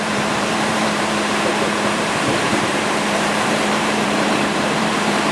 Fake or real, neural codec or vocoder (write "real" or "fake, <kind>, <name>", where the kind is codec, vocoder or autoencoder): fake, vocoder, BigVGAN v2